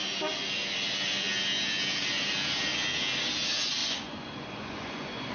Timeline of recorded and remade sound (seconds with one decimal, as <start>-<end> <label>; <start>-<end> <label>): 0.0-3.8 recorded; 3.8-5.3 remade